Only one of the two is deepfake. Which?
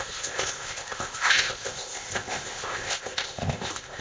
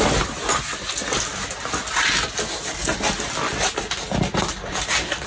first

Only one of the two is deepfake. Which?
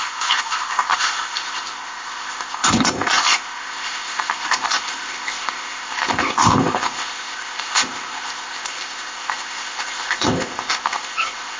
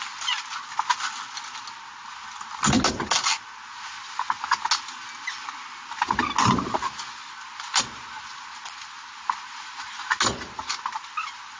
first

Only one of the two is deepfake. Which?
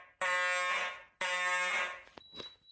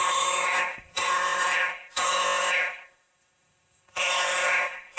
second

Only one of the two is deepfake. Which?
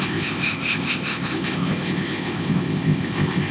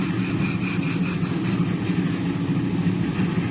first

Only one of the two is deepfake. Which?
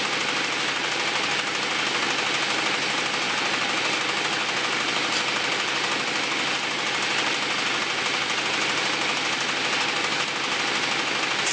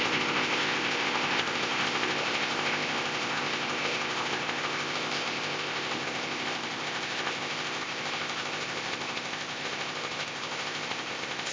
second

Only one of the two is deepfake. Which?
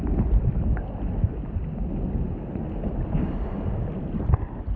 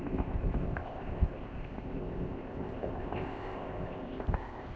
second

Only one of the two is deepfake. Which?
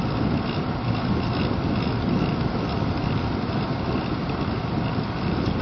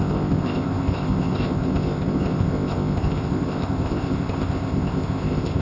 second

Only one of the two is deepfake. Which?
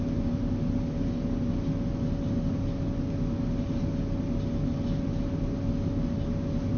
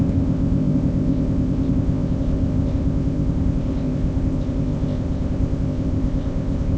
second